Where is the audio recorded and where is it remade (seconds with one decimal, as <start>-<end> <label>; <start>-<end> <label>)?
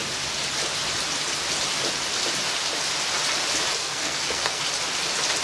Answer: 0.0-3.8 recorded; 3.8-4.6 remade; 4.6-5.4 recorded